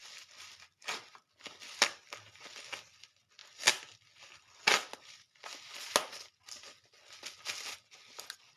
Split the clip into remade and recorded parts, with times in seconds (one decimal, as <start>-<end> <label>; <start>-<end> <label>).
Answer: 0.0-8.6 recorded